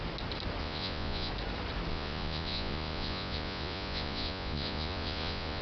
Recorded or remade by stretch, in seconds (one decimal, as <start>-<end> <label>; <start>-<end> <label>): 0.0-0.6 recorded; 0.6-1.3 remade; 1.3-1.9 recorded; 1.9-5.6 remade